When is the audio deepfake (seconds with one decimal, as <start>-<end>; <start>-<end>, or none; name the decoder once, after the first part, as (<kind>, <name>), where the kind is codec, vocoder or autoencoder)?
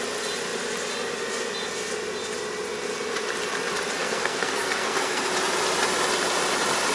4.0-5.3 (codec, SNAC)